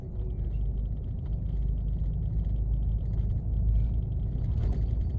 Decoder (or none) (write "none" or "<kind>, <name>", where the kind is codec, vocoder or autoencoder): none